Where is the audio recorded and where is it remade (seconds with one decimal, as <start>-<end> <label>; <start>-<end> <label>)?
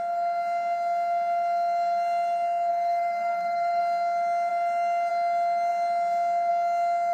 0.0-2.7 recorded; 2.7-3.8 remade; 3.8-7.1 recorded